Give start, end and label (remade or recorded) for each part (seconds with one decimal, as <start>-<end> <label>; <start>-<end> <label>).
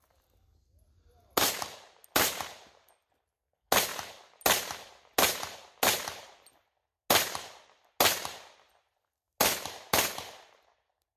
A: 0.0-11.2 recorded